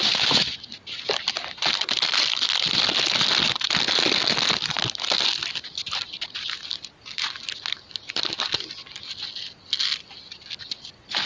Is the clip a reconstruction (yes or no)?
no